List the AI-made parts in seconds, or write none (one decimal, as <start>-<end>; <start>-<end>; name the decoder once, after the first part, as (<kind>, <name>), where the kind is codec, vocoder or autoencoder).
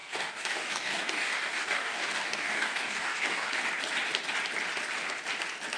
0.0-3.5 (codec, DAC)